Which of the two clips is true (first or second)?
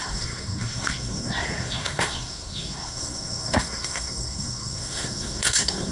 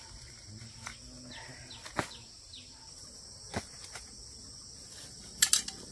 second